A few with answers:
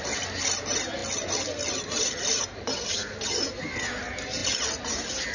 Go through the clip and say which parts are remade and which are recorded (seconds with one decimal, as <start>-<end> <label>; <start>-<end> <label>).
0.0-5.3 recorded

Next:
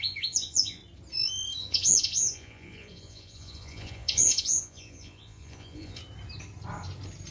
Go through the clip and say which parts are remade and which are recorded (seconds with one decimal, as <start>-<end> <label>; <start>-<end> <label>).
0.0-0.8 remade; 0.8-1.6 recorded; 1.6-6.0 remade; 6.0-7.3 recorded

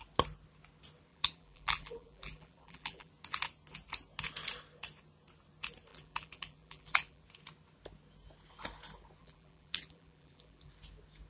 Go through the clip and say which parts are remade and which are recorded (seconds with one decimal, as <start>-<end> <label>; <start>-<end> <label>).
0.0-1.1 recorded; 1.1-3.1 remade; 3.1-5.9 recorded; 5.9-7.2 remade; 7.2-9.2 recorded; 9.2-10.7 remade; 10.7-11.3 recorded